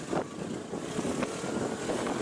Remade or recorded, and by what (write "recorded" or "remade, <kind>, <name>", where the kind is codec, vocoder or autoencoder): recorded